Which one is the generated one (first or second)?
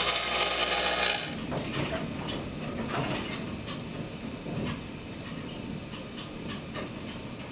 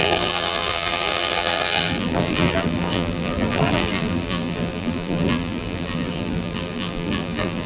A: second